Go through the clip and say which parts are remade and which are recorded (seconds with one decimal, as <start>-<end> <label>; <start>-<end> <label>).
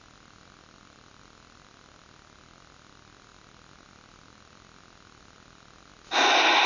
0.0-6.7 recorded